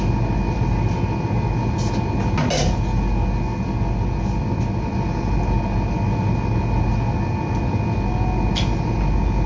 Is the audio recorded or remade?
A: recorded